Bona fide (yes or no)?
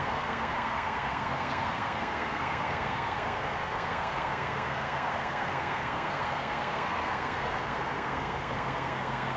no